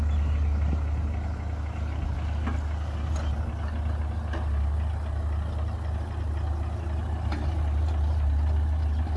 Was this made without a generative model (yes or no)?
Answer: yes